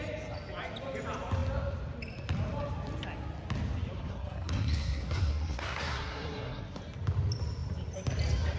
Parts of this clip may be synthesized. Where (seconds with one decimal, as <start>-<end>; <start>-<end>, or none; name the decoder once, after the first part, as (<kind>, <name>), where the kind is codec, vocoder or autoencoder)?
4.0-6.8 (codec, SNAC)